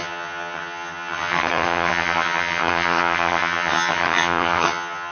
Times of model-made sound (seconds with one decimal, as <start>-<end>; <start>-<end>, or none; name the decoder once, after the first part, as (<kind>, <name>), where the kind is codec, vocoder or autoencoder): 0.0-5.1 (vocoder, HiFi-GAN)

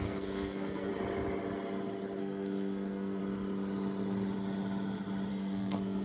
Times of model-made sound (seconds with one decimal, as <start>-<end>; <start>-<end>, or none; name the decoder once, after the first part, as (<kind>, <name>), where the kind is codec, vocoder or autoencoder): 0.0-0.9 (codec, SNAC); 2.2-3.2; 5.3-6.0

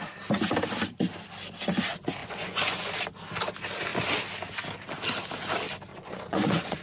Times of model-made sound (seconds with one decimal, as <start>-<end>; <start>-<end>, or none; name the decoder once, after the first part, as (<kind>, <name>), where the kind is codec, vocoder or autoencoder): 2.2-2.9 (vocoder, Vocos); 5.9-6.8

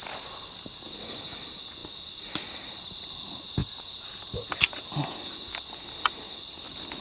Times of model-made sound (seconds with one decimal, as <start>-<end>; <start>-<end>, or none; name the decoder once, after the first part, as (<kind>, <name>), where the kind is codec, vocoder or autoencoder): none

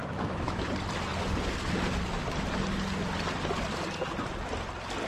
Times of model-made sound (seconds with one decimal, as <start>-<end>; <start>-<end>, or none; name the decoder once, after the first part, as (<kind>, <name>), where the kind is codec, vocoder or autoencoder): 0.0-0.7 (autoencoder, DAC-VAE)

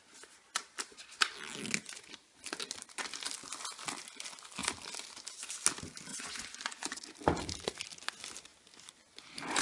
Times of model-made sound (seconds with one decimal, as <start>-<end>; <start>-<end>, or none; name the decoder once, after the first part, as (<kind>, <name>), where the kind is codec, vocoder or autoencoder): 6.1-7.1 (vocoder, Vocos)

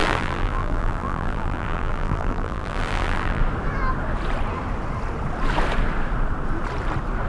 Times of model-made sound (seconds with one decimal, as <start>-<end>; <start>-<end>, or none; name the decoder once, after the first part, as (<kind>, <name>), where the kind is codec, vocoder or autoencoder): 0.0-3.4 (vocoder, BigVGAN v2)